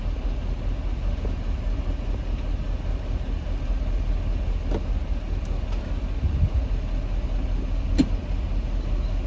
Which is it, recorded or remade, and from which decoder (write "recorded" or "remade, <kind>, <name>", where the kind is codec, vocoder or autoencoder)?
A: recorded